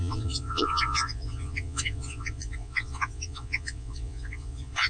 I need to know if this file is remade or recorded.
remade